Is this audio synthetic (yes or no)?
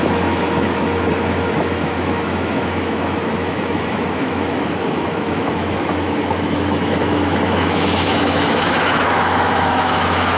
yes